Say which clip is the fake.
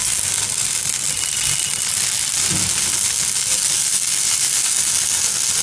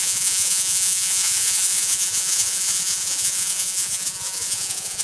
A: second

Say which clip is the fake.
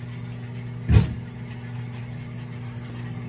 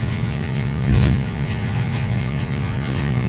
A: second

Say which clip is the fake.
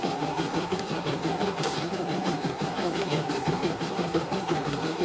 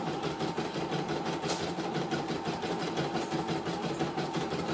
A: first